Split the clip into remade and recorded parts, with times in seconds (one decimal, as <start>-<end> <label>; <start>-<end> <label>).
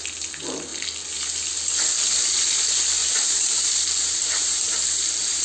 0.0-3.0 recorded; 3.0-3.7 remade; 3.7-5.4 recorded